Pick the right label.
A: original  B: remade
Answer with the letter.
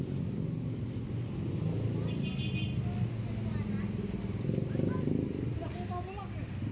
A